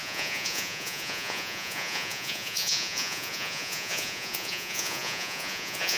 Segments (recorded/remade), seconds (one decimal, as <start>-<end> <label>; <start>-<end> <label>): 0.0-6.0 remade